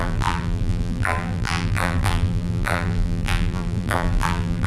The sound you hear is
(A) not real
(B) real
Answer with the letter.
A